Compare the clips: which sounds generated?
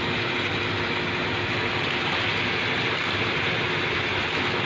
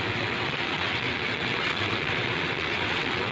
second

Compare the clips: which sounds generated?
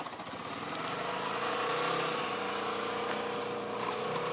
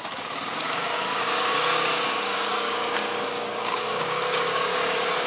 second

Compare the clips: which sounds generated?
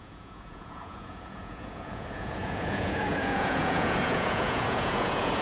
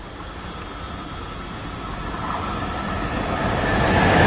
first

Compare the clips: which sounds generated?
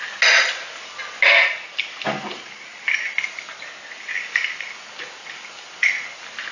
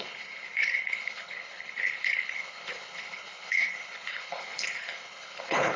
second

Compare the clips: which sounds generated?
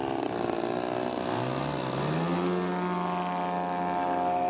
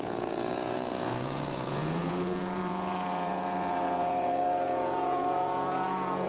second